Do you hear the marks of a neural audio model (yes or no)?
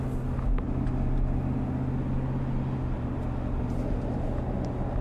no